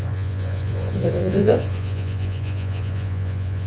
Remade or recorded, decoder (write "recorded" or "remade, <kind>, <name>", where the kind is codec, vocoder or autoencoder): remade, vocoder, Vocos